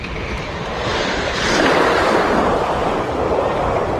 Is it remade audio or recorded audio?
recorded